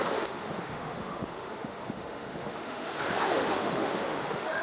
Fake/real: fake